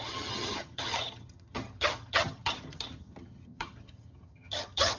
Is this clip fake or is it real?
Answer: fake